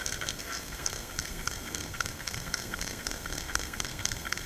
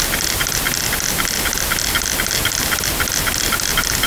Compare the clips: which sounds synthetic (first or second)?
first